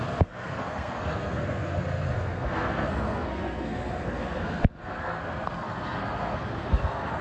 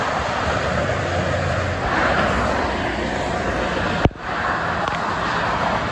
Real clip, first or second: second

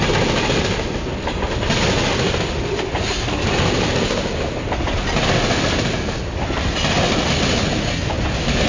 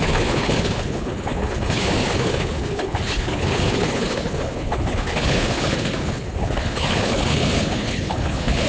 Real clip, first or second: first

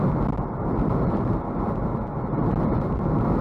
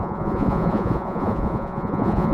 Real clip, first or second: first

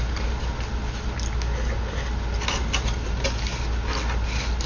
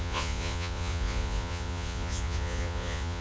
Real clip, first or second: first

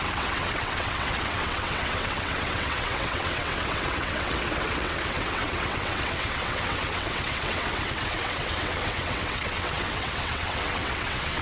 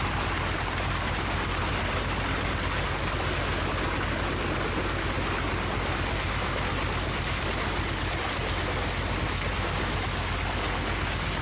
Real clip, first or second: second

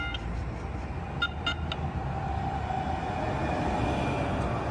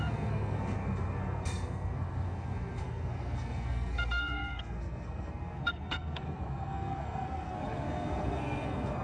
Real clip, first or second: first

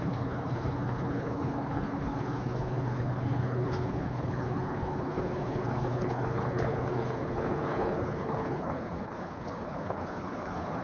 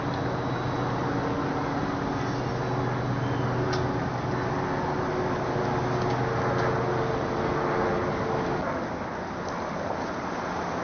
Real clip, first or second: second